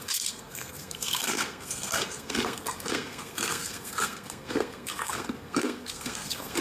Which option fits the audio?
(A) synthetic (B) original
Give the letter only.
A